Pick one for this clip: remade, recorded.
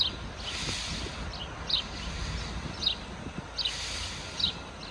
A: recorded